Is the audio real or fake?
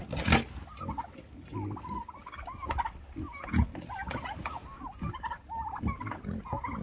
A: real